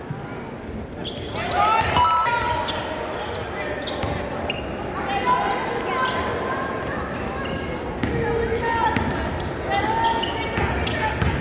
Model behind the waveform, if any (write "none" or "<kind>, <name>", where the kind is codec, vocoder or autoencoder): none